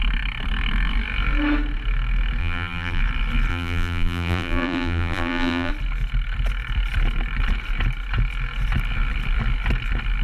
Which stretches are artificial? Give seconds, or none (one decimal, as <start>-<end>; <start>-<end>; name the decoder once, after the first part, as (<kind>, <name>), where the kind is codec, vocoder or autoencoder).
2.4-3.0 (vocoder, BigVGAN v2); 3.5-5.7